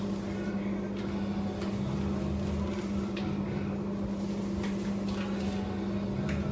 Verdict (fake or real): real